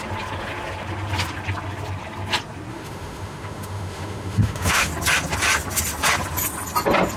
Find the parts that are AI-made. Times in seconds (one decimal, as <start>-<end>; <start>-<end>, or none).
2.7-4.9